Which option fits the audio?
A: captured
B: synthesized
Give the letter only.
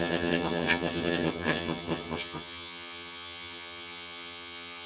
B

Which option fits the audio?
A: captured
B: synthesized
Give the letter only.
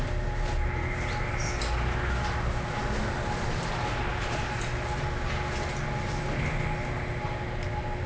A